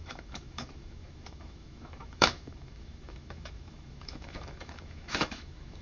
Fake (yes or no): yes